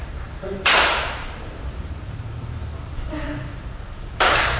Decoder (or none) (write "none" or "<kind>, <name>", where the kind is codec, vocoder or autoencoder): vocoder, BigVGAN v2